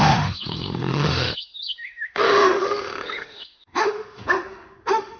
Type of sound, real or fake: fake